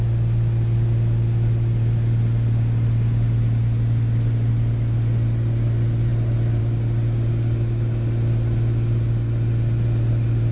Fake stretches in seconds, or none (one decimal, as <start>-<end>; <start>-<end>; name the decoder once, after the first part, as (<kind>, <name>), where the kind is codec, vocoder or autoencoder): none